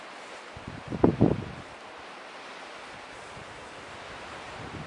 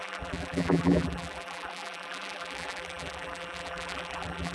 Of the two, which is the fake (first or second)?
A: second